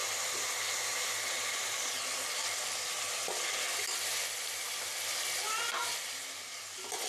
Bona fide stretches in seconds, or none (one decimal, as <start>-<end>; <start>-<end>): 0.0-7.1